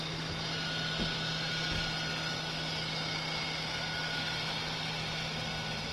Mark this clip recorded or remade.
recorded